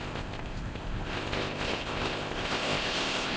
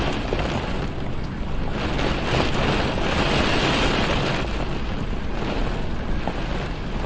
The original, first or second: second